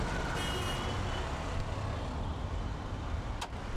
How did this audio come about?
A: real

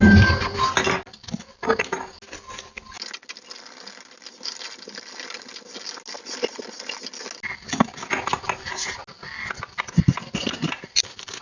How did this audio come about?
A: real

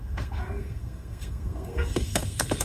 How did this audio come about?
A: fake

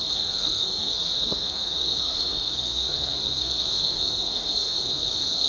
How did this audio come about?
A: fake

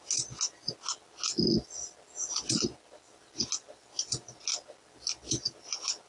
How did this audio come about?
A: real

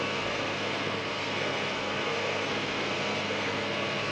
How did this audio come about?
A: fake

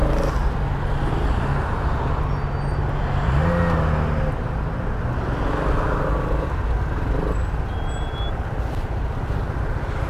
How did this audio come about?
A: real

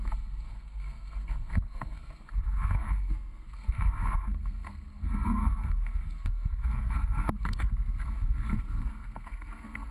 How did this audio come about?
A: fake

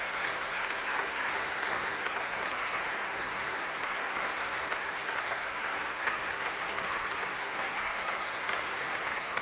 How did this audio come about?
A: fake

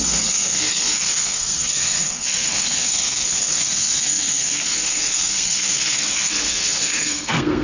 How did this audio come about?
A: fake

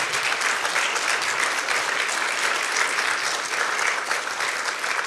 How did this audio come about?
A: real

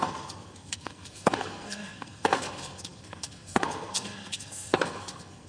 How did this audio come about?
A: fake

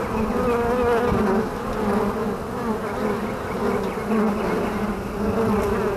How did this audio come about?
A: real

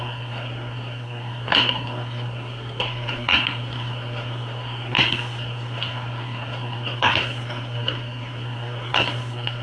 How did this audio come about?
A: fake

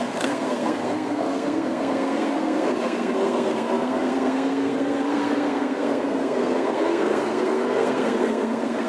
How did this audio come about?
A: fake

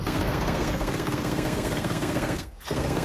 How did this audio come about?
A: fake